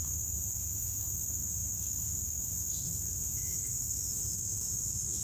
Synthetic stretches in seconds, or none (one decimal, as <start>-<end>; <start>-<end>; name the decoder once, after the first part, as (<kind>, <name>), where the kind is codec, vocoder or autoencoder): 0.0-5.2 (autoencoder, DAC-VAE)